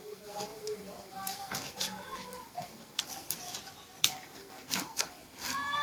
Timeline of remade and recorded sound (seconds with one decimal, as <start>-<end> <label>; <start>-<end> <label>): 0.0-3.4 remade; 3.4-4.0 recorded; 4.0-5.8 remade